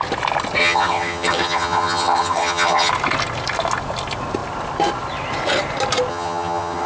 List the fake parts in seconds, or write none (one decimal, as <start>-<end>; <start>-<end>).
0.6-2.9; 6.1-6.9